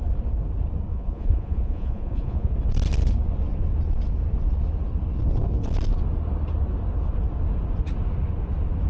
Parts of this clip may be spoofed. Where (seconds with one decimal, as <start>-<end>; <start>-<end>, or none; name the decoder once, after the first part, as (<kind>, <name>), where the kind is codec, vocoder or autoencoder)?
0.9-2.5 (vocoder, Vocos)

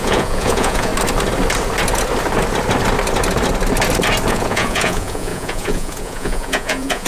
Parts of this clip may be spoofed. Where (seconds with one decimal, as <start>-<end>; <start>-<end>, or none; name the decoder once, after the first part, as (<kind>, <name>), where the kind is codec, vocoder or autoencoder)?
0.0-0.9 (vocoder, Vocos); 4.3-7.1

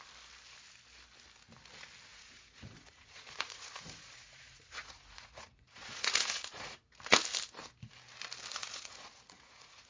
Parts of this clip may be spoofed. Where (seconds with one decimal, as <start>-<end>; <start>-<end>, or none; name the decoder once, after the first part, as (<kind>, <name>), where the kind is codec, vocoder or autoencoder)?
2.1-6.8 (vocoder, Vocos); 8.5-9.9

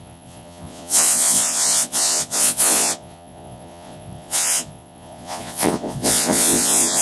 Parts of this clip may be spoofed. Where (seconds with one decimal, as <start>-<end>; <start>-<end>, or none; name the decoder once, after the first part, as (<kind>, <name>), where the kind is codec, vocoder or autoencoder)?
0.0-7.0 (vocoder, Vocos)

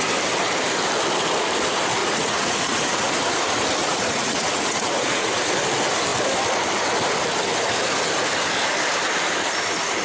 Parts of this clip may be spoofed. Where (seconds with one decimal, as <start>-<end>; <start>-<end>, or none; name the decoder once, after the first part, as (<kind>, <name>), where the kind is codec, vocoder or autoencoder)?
2.0-3.1 (vocoder, Vocos); 3.8-5.3